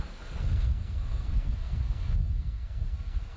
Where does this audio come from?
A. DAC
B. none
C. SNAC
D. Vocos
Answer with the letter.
C